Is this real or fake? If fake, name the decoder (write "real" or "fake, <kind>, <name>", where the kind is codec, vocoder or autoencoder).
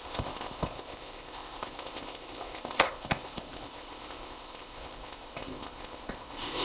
fake, codec, ZipCodec